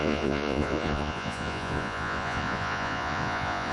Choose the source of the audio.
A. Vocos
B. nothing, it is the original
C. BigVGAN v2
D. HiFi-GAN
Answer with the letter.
A